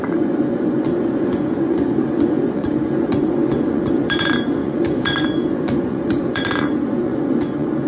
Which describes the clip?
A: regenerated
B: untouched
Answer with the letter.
A